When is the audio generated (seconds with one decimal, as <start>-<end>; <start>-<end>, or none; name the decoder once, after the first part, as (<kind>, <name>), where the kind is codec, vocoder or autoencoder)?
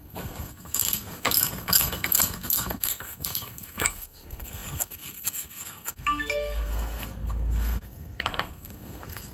0.0-9.3 (codec, SNAC)